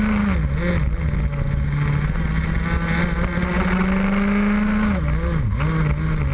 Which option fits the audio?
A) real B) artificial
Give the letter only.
A